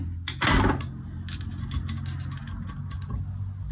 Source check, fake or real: real